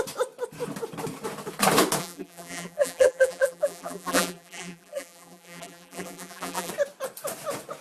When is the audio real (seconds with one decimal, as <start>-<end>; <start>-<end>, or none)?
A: 0.0-2.0; 6.7-7.8